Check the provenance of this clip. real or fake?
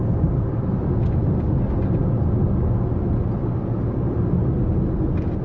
real